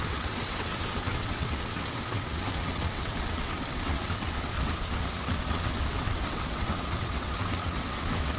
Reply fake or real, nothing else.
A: fake